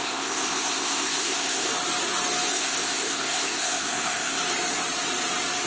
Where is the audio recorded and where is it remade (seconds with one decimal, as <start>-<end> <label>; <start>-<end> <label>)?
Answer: 0.0-1.7 remade; 1.7-2.5 recorded; 2.5-4.4 remade; 4.4-5.7 recorded